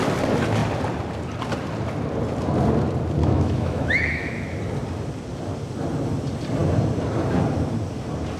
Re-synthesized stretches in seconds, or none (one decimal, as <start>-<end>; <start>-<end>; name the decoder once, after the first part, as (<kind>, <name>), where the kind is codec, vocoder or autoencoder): 3.2-4.6 (autoencoder, DAC-VAE)